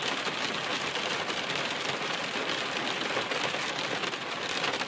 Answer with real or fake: real